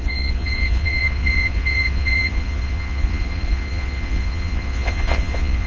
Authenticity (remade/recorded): remade